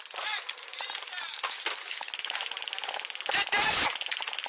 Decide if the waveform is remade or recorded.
recorded